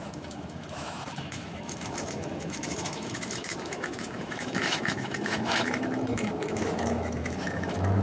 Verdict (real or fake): fake